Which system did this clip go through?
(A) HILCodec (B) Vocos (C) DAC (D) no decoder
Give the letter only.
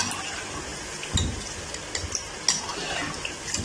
D